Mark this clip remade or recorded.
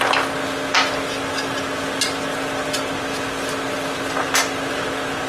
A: recorded